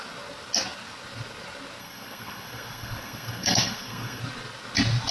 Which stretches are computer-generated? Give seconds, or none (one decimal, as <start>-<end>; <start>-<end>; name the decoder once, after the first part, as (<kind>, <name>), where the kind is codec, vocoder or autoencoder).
1.8-4.2 (codec, SNAC)